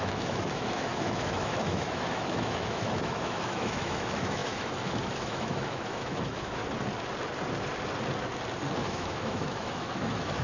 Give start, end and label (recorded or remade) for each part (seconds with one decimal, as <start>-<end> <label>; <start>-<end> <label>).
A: 0.0-6.6 remade; 6.6-8.8 recorded; 8.8-10.4 remade